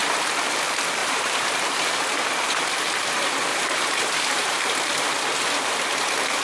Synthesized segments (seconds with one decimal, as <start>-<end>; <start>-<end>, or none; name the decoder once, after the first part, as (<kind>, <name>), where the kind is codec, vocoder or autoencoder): 1.0-1.8 (vocoder, BigVGAN v2); 3.5-5.1